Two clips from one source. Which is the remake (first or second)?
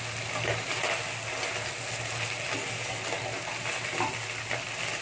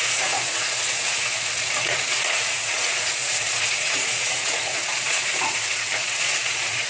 second